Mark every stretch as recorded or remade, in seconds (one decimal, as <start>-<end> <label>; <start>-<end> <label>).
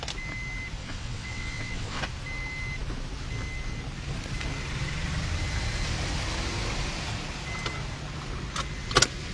0.0-0.8 recorded; 0.8-2.0 remade; 2.0-9.3 recorded